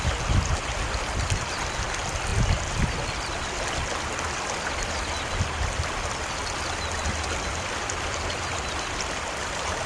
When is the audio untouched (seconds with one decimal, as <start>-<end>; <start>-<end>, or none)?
0.0-9.9